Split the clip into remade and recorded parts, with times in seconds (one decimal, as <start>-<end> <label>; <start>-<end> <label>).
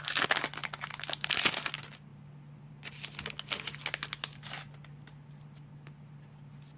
0.0-6.8 recorded